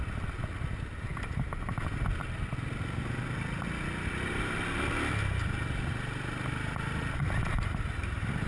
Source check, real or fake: real